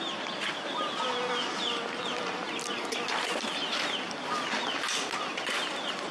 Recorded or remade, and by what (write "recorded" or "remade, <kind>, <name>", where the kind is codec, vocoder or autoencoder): recorded